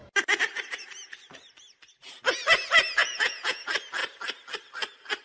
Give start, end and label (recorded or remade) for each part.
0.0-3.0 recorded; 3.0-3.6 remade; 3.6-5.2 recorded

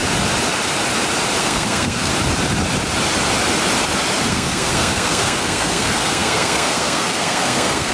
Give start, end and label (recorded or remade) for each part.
0.0-1.4 recorded; 1.4-2.1 remade; 2.1-4.3 recorded; 4.3-7.9 remade

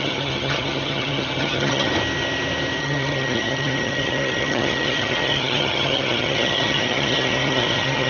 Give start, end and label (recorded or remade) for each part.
0.0-1.9 remade; 1.9-2.8 recorded; 2.8-8.1 remade

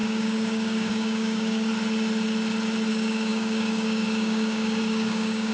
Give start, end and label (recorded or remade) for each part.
0.0-1.7 remade; 1.7-2.9 recorded; 2.9-5.5 remade

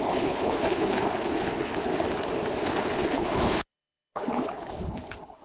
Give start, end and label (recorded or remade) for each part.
0.0-1.9 remade; 1.9-2.6 recorded; 2.6-5.4 remade

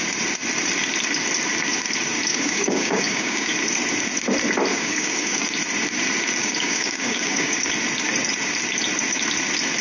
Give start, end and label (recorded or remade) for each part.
0.0-2.3 recorded; 2.3-3.5 remade; 3.5-4.7 recorded; 4.7-5.4 remade; 5.4-6.4 recorded; 6.4-7.6 remade; 7.6-9.8 recorded

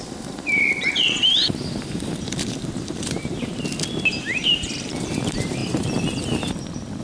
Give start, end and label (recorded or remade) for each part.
0.0-3.5 remade; 3.5-4.1 recorded; 4.1-5.6 remade; 5.6-7.0 recorded